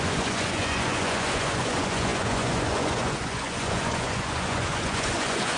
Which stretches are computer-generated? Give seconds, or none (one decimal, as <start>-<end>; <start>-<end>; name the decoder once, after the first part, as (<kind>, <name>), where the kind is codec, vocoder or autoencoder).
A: 0.0-5.6 (vocoder, Vocos)